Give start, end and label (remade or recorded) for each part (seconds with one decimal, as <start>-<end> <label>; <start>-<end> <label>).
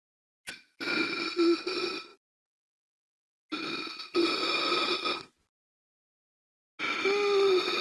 0.0-7.8 recorded